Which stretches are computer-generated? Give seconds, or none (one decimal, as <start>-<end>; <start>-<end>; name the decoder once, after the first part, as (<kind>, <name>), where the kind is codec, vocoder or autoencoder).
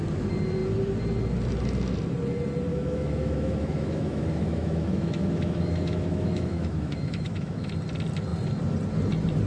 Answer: 2.7-7.7 (autoencoder, DAC-VAE)